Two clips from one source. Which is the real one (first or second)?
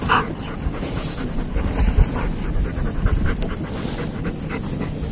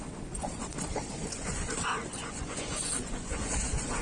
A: first